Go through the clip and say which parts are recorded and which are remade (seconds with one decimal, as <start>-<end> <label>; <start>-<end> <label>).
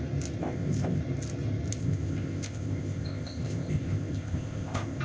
0.0-0.4 recorded; 0.4-1.0 remade; 1.0-1.8 recorded; 1.8-5.0 remade